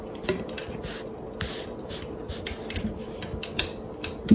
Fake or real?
real